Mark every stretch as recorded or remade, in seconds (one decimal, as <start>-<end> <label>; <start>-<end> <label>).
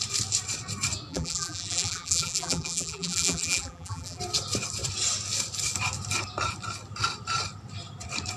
0.0-1.1 recorded; 1.1-4.2 remade; 4.2-8.4 recorded